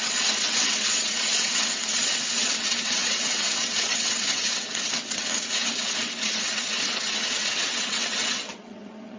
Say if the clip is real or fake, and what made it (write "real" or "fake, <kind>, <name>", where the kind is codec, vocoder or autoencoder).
fake, vocoder, WaveNeXt